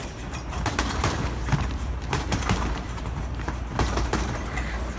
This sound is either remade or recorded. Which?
remade